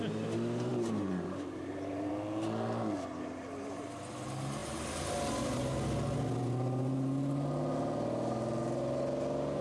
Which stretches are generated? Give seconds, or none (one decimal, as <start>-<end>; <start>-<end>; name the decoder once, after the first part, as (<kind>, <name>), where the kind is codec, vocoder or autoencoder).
0.7-2.1 (vocoder, BigVGAN v2)